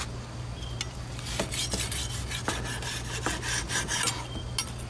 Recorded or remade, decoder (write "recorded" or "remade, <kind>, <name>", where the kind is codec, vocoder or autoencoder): recorded